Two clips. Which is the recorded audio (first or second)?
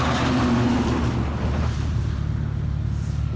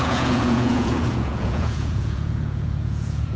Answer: first